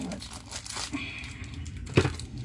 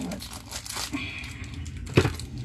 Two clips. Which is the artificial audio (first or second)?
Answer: first